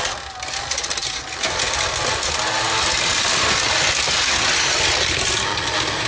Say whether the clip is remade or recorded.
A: recorded